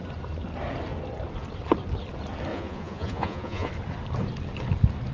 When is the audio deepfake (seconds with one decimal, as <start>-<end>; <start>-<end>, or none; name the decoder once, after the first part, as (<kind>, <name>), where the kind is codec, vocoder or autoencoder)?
2.5-3.7 (vocoder, Vocos)